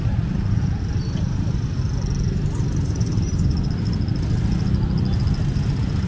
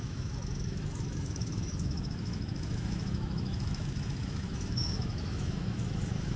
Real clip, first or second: first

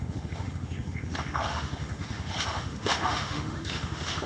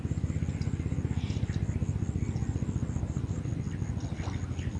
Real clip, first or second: second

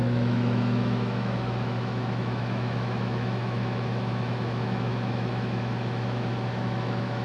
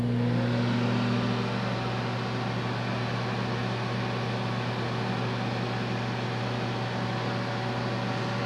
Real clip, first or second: second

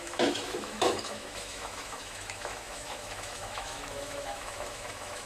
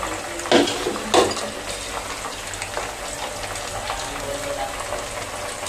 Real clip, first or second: second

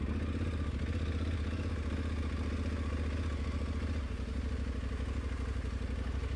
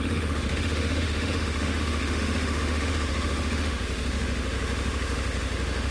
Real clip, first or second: first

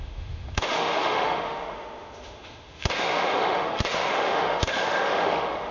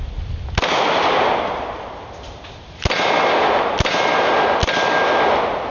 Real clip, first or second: second